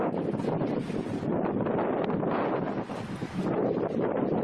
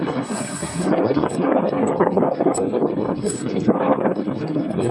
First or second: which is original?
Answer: first